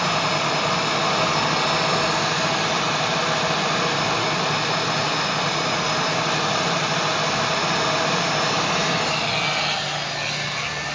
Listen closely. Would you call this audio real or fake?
real